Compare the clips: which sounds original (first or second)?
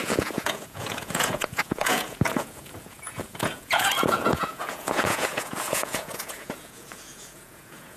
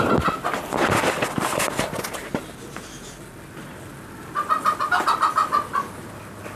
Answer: second